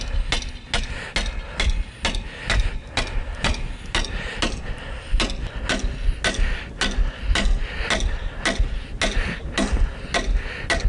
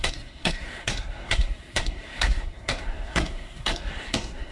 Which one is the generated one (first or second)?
second